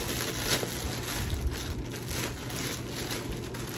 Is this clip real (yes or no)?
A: yes